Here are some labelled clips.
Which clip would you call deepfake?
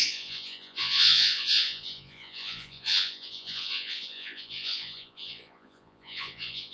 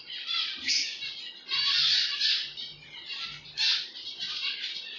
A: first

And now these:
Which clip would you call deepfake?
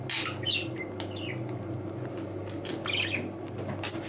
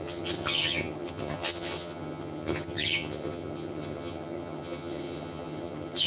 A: second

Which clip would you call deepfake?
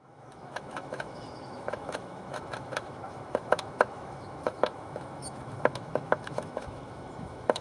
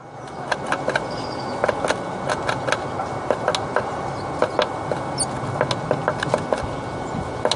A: first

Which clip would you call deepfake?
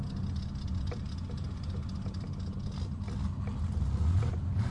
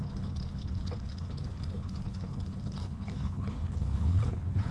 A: second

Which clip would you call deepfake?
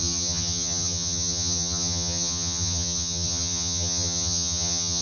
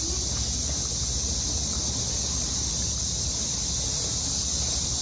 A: first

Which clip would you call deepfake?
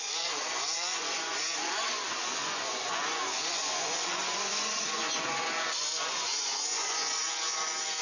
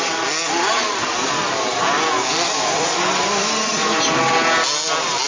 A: first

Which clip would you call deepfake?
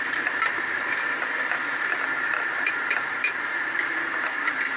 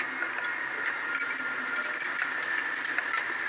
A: first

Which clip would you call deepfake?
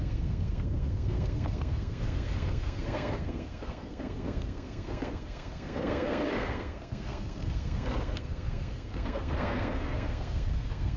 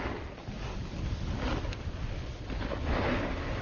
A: first